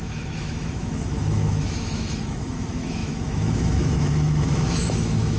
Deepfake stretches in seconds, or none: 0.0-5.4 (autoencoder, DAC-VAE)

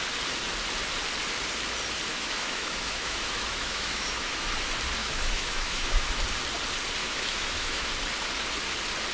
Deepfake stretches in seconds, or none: 2.1-4.5 (autoencoder, DAC-VAE); 5.0-6.2; 7.0-7.9

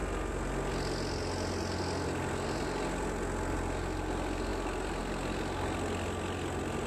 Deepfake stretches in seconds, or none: none

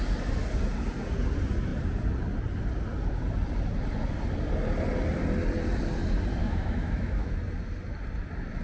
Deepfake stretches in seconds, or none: 6.4-7.3 (autoencoder, DAC-VAE)

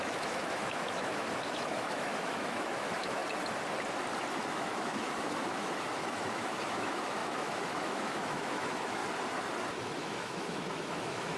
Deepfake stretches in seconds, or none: 0.0-3.2 (autoencoder, DAC-VAE); 4.5-9.0; 9.8-11.4

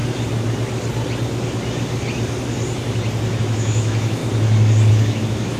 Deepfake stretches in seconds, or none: 3.4-4.2 (autoencoder, DAC-VAE); 4.9-5.6